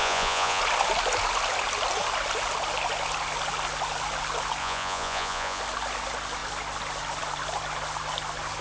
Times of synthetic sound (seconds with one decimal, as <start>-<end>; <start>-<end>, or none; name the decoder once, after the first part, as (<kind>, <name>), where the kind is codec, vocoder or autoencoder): 0.0-0.6 (vocoder, Vocos); 4.6-5.6